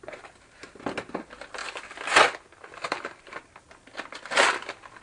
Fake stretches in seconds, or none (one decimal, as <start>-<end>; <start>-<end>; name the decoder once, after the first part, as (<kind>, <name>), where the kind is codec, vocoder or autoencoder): none